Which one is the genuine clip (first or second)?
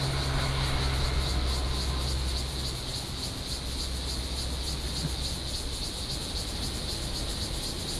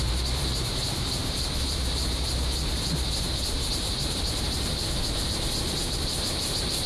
first